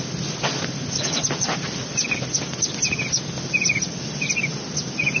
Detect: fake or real real